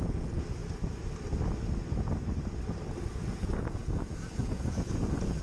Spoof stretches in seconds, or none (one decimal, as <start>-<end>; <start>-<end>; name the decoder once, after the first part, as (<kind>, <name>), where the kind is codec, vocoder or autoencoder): 0.0-0.6 (vocoder, Vocos); 3.1-5.4